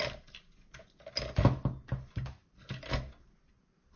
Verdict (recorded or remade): recorded